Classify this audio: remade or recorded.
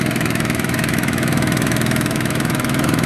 remade